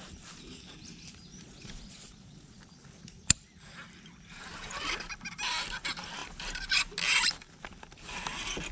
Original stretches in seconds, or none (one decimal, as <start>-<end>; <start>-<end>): 0.0-1.3; 2.6-8.7